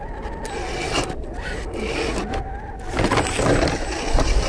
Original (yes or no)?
yes